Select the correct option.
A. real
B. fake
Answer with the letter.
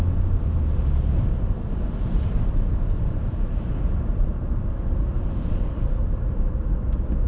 B